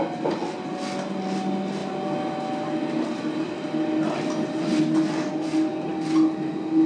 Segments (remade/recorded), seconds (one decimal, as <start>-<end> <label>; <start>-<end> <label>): 0.0-6.9 recorded